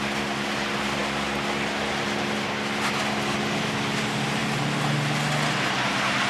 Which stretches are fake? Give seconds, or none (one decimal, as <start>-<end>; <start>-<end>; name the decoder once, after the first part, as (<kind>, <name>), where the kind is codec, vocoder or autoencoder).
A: none